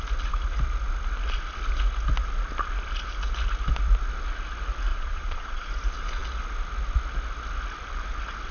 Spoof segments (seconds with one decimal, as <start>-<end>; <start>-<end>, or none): 4.9-5.7